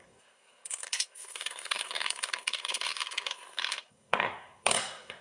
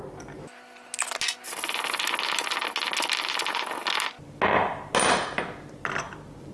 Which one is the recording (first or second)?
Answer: second